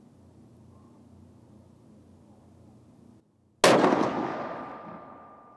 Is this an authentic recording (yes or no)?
yes